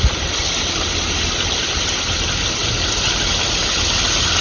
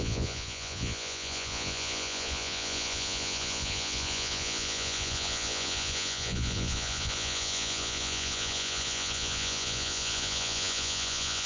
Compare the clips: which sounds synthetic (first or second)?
second